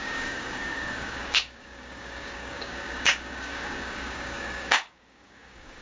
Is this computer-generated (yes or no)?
yes